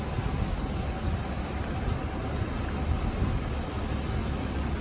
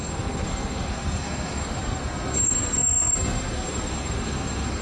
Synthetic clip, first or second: second